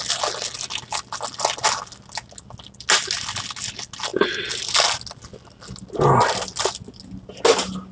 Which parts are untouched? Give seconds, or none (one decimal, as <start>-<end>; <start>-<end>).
0.0-7.9